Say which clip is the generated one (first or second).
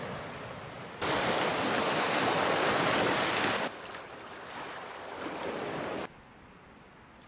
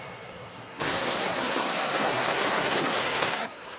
second